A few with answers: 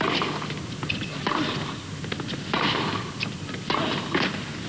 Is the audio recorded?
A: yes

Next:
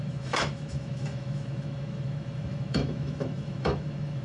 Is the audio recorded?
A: no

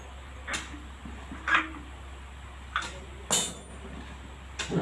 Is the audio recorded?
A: yes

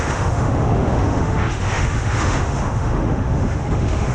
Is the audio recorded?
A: no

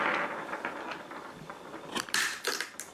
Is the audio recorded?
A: yes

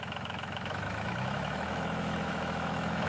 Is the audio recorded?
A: no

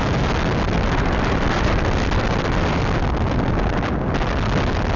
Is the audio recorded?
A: yes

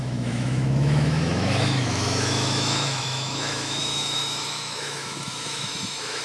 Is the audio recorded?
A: no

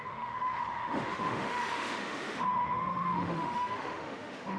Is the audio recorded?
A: no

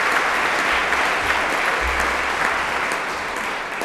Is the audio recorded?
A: yes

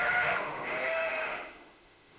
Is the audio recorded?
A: no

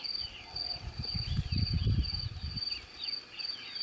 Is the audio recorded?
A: yes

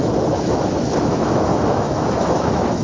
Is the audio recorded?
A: no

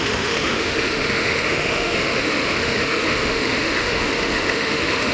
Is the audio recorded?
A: no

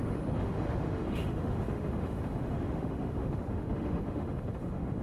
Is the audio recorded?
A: no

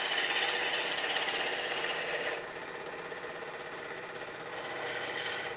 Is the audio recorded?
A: yes